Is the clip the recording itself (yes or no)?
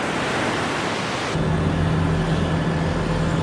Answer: yes